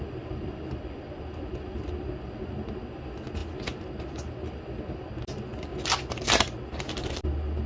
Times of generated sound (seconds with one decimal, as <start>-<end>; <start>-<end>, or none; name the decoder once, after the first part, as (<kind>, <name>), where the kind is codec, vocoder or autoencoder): none